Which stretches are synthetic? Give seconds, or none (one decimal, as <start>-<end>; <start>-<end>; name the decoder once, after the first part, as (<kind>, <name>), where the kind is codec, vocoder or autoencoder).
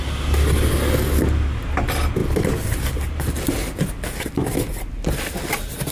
none